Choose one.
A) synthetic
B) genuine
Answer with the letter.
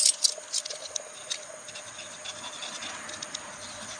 B